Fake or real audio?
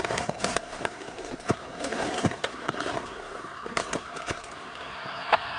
fake